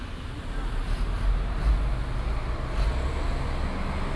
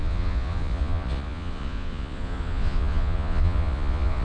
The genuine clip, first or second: first